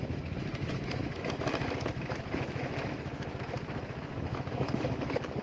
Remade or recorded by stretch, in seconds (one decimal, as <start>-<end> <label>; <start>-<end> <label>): 0.0-5.4 remade